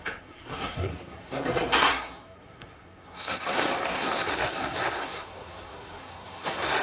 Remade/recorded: remade